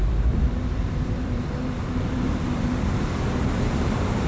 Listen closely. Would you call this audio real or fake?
fake